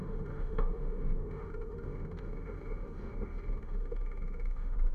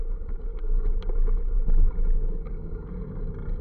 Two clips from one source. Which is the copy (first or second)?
first